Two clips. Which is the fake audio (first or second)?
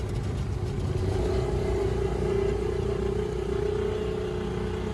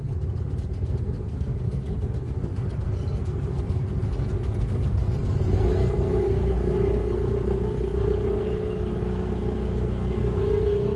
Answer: second